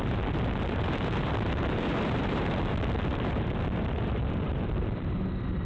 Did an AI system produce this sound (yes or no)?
yes